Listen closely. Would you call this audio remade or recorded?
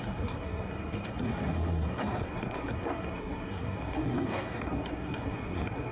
remade